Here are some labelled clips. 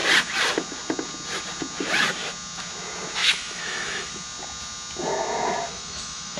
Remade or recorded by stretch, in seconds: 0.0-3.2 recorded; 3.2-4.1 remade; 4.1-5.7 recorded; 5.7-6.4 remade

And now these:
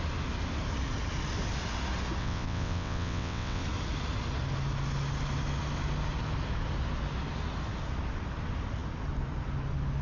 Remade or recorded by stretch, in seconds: 0.0-2.2 recorded; 2.2-3.6 remade; 3.6-10.0 recorded

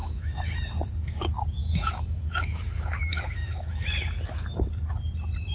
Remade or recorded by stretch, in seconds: 0.0-0.6 remade; 0.6-1.6 recorded; 1.6-3.9 remade; 3.9-5.5 recorded

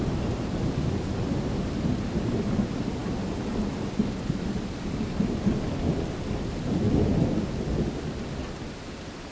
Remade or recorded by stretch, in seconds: 0.0-9.3 recorded

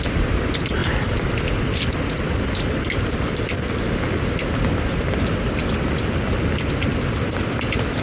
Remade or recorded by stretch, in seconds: 0.0-8.0 recorded

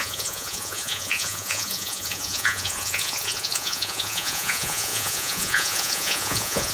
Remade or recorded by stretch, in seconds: 0.0-6.7 remade

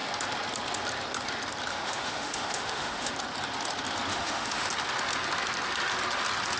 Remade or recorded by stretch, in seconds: 0.0-1.7 recorded; 1.7-3.1 remade; 3.1-4.1 recorded; 4.1-4.7 remade; 4.7-6.6 recorded

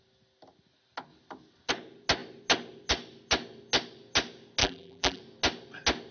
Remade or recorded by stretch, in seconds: 0.0-4.6 recorded; 4.6-5.2 remade; 5.2-6.1 recorded